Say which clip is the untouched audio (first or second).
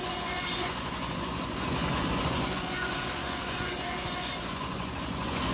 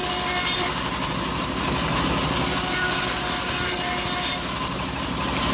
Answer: second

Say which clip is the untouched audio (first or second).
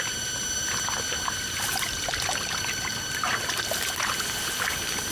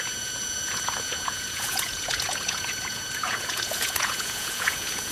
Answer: first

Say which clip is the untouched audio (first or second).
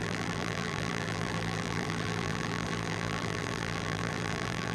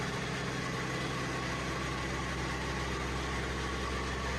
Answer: second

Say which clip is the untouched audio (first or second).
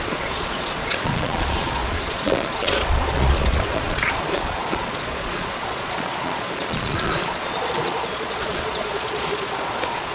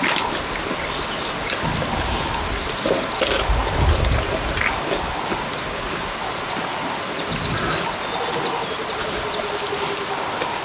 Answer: second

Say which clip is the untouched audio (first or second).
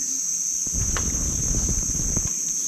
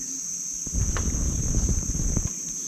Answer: first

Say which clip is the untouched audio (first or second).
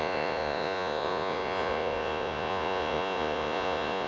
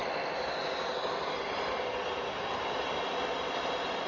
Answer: second